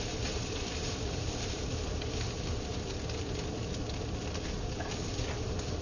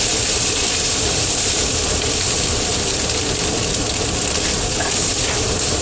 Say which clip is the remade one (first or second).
second